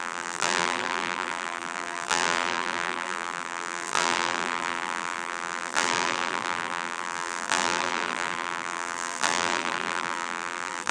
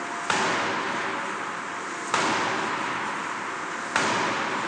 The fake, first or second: first